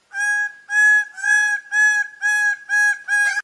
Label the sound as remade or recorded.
recorded